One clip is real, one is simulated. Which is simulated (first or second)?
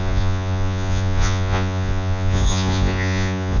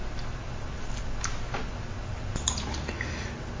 first